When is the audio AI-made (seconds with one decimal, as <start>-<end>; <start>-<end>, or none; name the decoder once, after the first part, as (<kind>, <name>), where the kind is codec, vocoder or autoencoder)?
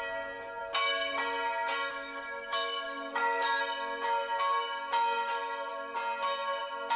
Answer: 1.9-3.6 (codec, DAC)